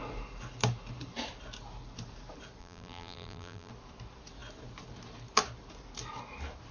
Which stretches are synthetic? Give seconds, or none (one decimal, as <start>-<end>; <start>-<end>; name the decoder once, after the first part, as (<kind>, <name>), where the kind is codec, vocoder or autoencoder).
2.6-3.7 (vocoder, BigVGAN v2)